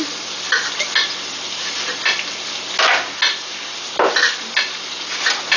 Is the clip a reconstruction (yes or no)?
no